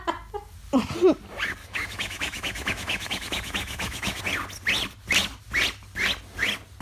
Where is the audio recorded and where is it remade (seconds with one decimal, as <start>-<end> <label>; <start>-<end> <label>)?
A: 0.0-1.6 recorded; 1.6-4.2 remade; 4.2-6.8 recorded